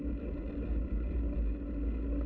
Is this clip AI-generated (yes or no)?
no